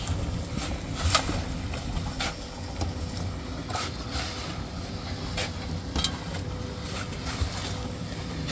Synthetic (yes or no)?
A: no